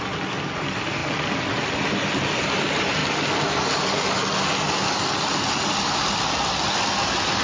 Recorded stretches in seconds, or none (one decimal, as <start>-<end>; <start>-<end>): 0.0-7.4